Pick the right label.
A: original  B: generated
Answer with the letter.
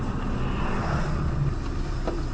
A